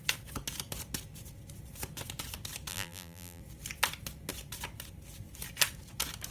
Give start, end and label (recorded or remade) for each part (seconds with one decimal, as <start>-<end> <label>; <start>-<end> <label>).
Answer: 0.0-2.7 recorded; 2.7-3.4 remade; 3.4-6.3 recorded